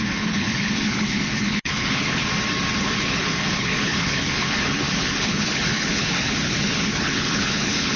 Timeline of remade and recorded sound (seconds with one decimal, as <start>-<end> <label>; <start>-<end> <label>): 0.0-2.3 remade; 2.3-2.8 recorded; 2.8-8.0 remade